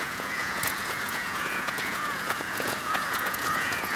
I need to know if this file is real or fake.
fake